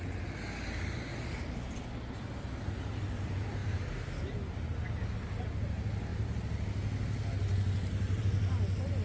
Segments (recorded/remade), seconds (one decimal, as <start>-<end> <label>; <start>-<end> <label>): 0.0-9.0 recorded